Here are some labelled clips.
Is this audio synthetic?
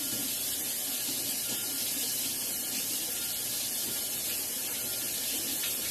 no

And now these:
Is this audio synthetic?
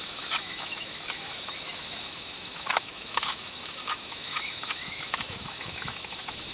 yes